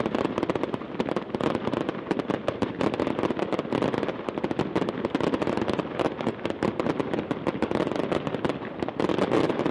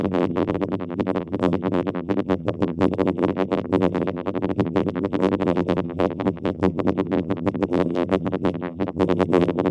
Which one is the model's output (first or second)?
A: second